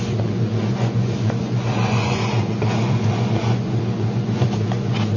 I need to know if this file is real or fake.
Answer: fake